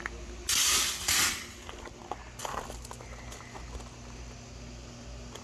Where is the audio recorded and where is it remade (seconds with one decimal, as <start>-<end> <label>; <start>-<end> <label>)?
0.0-5.4 recorded